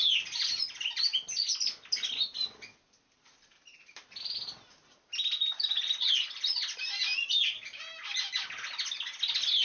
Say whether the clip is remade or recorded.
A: recorded